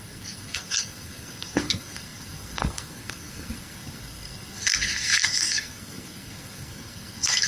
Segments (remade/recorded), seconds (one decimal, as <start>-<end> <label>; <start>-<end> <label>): 0.0-7.5 remade